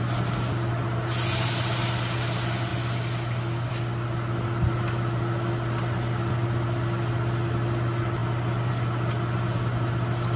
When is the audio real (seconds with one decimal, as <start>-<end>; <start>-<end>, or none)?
0.0-10.4